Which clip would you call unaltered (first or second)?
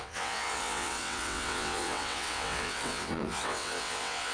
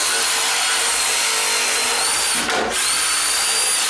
second